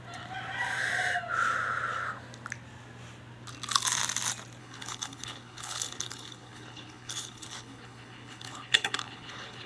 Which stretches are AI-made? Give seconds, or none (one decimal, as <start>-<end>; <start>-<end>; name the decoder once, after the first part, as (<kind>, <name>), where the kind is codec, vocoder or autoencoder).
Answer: 4.6-9.7 (codec, HILCodec)

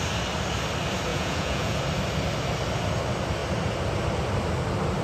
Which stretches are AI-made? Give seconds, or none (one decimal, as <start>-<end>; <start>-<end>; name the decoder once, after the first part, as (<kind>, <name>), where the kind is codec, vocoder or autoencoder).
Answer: 1.1-1.8 (vocoder, Vocos)

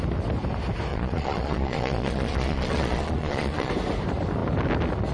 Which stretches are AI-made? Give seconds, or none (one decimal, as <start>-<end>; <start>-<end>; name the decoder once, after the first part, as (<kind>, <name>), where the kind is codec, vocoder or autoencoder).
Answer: 0.9-3.7 (vocoder, Vocos)

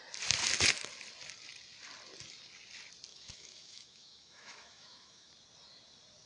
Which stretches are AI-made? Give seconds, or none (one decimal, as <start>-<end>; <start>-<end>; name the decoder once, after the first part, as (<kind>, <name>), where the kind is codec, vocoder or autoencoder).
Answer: 3.1-5.3 (autoencoder, DAC-VAE)

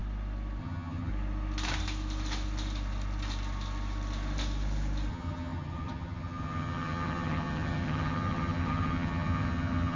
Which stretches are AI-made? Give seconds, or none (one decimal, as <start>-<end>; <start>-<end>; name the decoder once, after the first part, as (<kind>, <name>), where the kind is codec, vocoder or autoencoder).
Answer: 0.6-1.1 (vocoder, HiFi-GAN); 5.1-10.0